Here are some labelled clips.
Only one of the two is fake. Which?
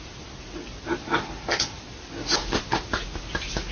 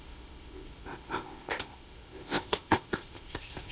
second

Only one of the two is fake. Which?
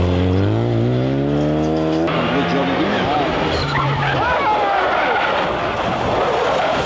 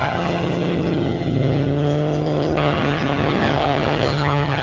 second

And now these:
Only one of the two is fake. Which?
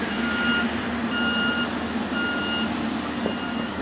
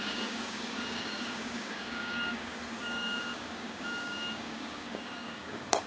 second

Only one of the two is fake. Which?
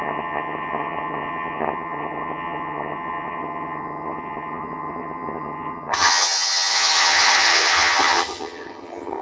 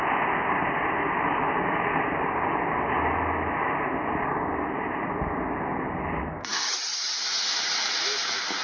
first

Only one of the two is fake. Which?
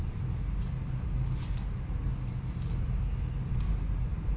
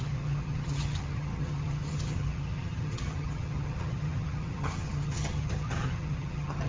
second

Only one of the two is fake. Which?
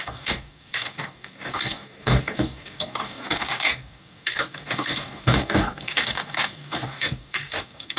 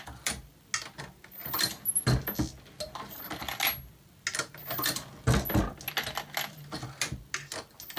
first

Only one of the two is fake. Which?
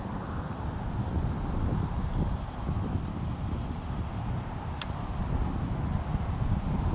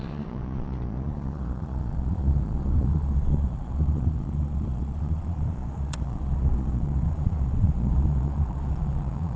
second